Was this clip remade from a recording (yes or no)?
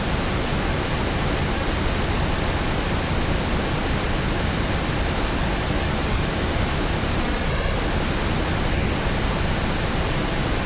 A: no